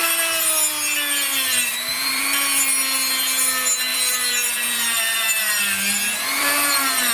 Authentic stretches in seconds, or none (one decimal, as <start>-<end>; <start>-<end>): 0.0-1.3; 2.2-3.9